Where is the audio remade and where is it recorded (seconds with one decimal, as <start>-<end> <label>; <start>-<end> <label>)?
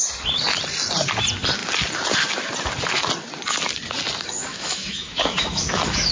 0.0-4.5 recorded; 4.5-6.1 remade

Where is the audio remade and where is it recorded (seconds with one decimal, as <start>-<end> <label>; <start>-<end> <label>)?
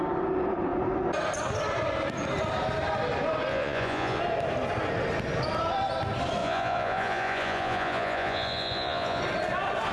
0.0-3.5 recorded; 3.5-4.2 remade; 4.2-6.4 recorded; 6.4-9.2 remade; 9.2-9.9 recorded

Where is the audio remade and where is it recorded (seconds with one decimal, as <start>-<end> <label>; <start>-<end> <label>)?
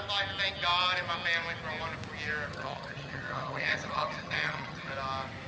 0.0-2.5 recorded; 2.5-4.9 remade; 4.9-5.5 recorded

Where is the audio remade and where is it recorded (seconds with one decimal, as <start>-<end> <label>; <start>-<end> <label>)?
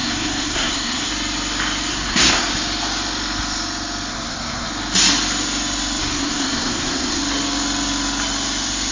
0.0-1.1 remade; 1.1-1.9 recorded; 1.9-2.4 remade; 2.4-4.1 recorded; 4.1-4.7 remade; 4.7-6.0 recorded; 6.0-7.2 remade; 7.2-8.9 recorded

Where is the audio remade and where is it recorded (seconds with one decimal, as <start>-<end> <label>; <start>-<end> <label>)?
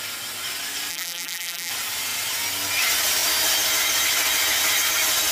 0.0-0.9 recorded; 0.9-1.7 remade; 1.7-5.3 recorded